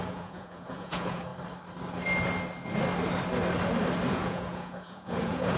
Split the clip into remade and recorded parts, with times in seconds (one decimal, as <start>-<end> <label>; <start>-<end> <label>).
0.0-1.3 remade; 1.3-4.1 recorded; 4.1-5.6 remade